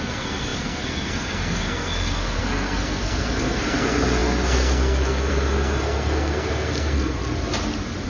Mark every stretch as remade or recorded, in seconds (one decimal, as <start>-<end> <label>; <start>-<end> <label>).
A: 0.0-7.2 remade; 7.2-8.1 recorded